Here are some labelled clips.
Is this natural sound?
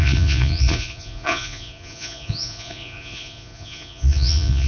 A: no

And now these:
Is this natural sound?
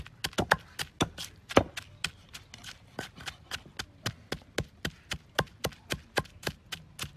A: yes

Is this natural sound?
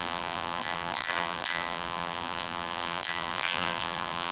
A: no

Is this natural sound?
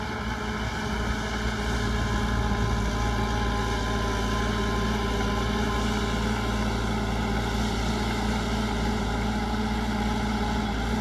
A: yes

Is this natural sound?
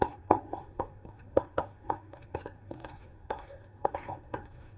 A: no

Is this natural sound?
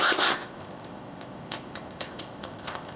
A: no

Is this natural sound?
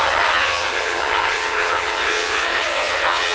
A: no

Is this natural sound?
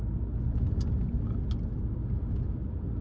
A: yes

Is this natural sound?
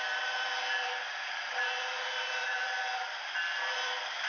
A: no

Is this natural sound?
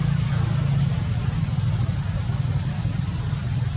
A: yes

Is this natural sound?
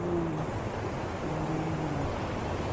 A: yes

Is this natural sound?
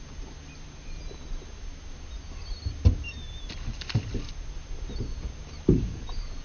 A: yes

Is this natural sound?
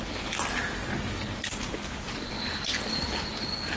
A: yes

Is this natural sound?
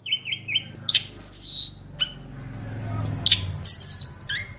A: yes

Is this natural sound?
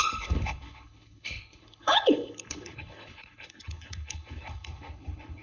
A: no